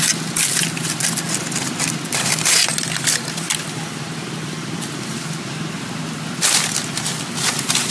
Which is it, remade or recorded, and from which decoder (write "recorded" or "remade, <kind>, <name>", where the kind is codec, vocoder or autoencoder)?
recorded